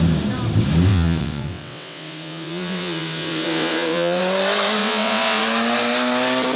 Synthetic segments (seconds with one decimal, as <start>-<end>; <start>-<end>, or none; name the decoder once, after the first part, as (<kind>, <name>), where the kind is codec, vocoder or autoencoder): 0.9-4.2 (vocoder, WaveNeXt); 4.8-5.4